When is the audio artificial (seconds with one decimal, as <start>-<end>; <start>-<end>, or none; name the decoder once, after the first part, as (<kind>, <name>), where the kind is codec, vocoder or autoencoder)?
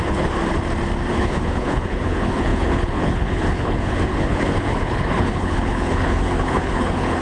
0.0-0.4 (codec, HILCodec); 1.1-7.2